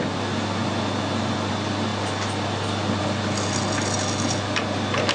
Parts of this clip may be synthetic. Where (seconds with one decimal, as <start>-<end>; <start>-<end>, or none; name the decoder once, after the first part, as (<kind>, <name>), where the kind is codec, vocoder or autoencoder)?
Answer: none